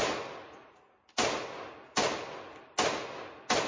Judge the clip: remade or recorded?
recorded